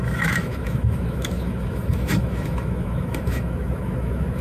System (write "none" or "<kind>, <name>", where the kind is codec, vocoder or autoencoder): autoencoder, DAC-VAE